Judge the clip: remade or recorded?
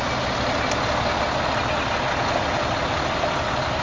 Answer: recorded